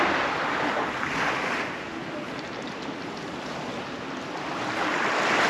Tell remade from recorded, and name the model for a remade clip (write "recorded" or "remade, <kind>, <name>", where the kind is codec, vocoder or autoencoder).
recorded